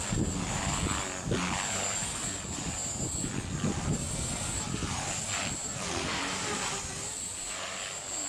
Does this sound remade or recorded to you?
recorded